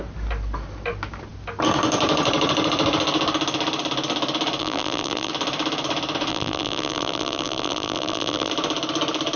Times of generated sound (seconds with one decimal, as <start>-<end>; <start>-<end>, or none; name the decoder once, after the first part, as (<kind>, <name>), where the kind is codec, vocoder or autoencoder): 4.6-5.3 (vocoder, BigVGAN v2); 6.3-8.5